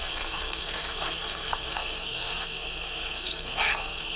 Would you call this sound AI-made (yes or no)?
yes